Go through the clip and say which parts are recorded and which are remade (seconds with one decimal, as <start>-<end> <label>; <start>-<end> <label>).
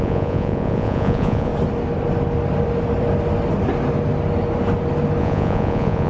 0.0-1.5 remade; 1.5-5.2 recorded; 5.2-6.1 remade